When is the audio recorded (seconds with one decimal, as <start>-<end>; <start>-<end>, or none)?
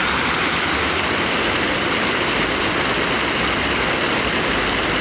2.6-5.0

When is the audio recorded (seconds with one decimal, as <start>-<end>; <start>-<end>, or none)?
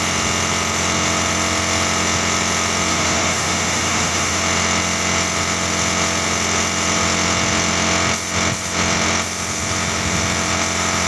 0.0-2.9; 4.4-11.1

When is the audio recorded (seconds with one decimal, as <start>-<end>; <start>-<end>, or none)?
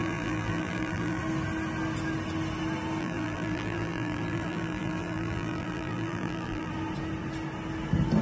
1.2-3.0; 6.7-8.2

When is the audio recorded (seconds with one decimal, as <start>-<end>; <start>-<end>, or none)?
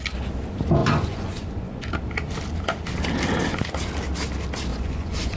0.0-0.8; 1.9-4.7